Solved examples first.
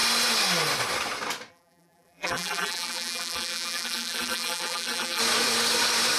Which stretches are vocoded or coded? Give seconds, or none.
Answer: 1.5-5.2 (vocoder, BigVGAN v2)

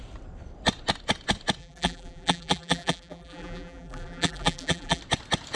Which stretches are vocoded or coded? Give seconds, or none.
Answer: 1.6-5.0 (vocoder, BigVGAN v2)

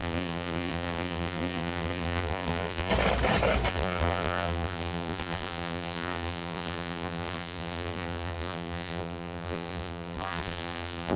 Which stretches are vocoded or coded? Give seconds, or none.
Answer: 0.0-2.9 (vocoder, BigVGAN v2); 3.7-11.2

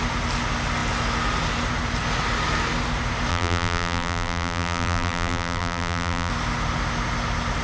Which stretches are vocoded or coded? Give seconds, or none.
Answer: 3.3-6.3 (vocoder, BigVGAN v2)

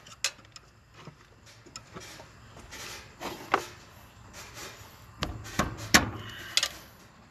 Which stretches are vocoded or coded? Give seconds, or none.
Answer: none